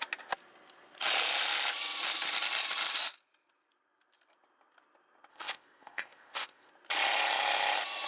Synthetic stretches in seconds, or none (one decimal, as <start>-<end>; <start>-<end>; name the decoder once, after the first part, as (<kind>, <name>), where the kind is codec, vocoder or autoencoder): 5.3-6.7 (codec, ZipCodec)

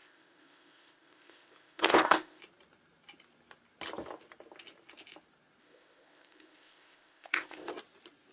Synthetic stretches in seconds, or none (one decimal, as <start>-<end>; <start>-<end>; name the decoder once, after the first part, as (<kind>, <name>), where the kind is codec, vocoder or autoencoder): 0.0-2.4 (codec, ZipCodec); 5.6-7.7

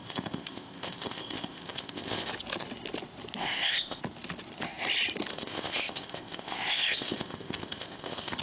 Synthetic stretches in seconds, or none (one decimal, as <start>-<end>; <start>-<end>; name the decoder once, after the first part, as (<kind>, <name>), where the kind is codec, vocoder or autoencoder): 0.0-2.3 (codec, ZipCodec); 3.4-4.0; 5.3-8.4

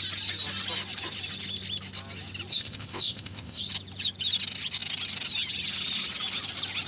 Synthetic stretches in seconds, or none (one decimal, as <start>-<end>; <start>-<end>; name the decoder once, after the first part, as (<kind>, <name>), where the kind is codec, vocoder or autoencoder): 2.5-3.6 (codec, ZipCodec)

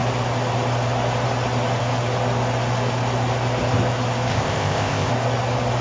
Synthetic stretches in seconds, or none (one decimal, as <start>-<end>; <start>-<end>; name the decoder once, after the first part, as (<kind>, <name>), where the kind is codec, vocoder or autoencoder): 4.3-5.1 (codec, ZipCodec)

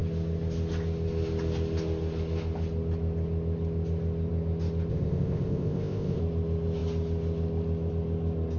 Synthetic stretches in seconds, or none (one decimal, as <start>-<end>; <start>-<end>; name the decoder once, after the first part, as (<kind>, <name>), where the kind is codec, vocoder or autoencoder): 4.9-6.2 (codec, ZipCodec)

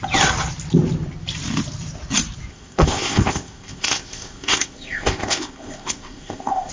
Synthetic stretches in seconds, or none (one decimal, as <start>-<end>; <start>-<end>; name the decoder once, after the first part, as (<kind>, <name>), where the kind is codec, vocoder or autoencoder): 2.5-6.7 (codec, ZipCodec)